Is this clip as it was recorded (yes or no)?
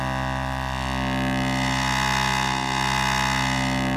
yes